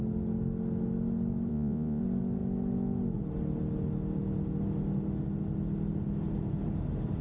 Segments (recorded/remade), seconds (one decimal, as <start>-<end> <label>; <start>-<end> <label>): 0.0-1.5 recorded; 1.5-2.0 remade; 2.0-7.2 recorded